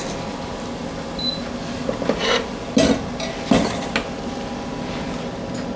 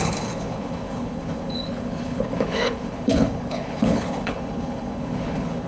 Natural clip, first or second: first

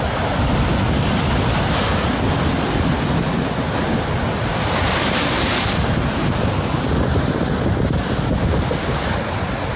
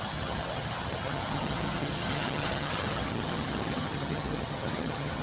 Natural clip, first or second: first